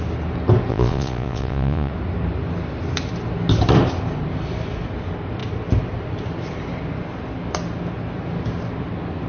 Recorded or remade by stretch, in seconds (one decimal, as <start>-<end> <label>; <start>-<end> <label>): 0.0-0.7 recorded; 0.7-1.9 remade; 1.9-9.3 recorded